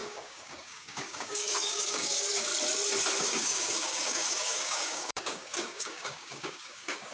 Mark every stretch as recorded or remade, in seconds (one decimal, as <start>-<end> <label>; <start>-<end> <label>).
0.0-2.5 remade; 2.5-3.2 recorded; 3.2-7.1 remade